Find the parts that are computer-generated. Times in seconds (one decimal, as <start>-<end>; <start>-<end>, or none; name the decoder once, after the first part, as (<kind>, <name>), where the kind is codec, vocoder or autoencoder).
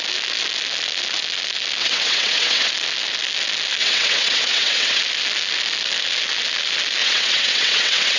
1.8-2.7 (vocoder, WaveNeXt); 3.8-5.0; 7.0-8.2